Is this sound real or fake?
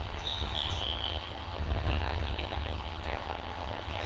fake